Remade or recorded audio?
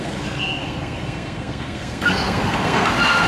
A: remade